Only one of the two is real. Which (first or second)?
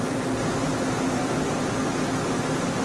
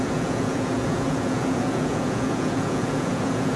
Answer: first